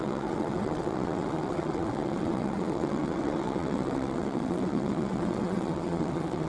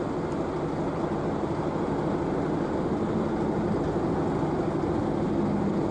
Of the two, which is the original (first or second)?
second